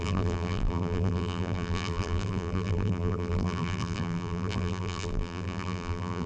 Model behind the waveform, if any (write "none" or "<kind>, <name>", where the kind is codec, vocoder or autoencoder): vocoder, BigVGAN v2